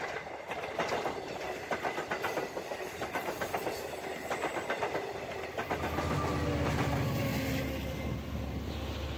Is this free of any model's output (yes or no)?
yes